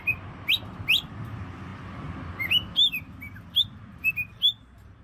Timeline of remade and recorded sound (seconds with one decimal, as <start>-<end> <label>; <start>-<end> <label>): 0.0-5.0 recorded